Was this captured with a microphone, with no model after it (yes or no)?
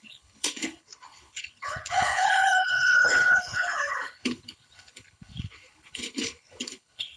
no